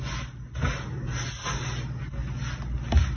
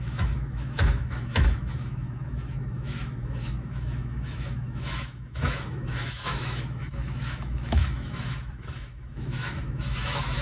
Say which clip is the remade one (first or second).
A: second